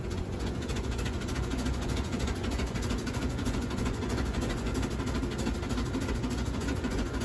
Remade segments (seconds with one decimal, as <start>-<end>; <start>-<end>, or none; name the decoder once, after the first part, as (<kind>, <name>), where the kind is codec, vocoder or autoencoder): 0.0-4.7 (vocoder, Vocos); 6.1-7.2